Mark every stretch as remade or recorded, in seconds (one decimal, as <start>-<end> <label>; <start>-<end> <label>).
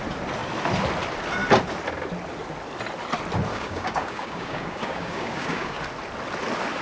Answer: 0.0-3.5 recorded; 3.5-5.8 remade; 5.8-6.8 recorded